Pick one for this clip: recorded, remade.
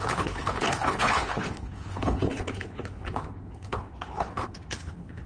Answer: remade